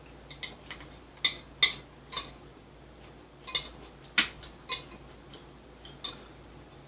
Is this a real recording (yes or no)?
yes